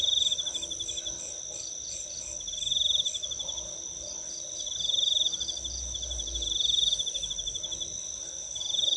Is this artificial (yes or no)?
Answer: no